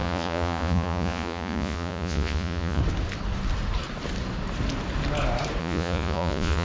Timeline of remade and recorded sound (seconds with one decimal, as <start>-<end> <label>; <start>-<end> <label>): 0.0-2.8 remade; 2.8-5.6 recorded; 5.6-6.6 remade